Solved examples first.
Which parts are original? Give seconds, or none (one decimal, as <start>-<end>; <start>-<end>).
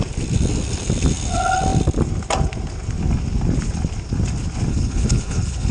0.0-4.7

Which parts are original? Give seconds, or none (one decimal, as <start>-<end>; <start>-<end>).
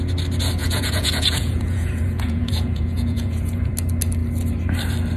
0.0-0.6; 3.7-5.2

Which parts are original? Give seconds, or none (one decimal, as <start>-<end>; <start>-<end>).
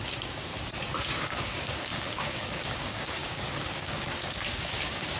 0.5-1.2